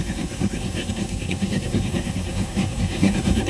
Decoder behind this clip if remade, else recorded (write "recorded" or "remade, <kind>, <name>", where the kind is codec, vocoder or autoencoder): remade, codec, SNAC